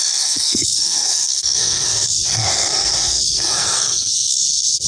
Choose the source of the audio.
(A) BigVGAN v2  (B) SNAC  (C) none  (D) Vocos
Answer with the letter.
B